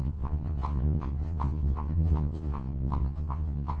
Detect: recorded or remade remade